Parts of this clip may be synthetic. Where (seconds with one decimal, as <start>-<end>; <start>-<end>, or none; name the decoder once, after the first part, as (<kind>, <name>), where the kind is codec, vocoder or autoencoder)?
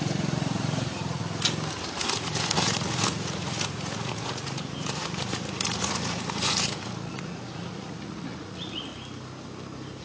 0.0-1.2 (vocoder, Vocos); 1.8-8.9